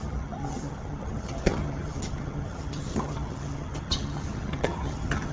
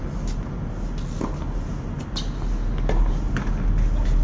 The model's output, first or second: first